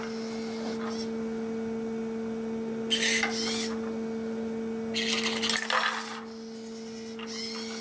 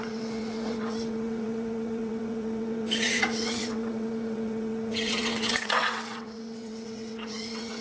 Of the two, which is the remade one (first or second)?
second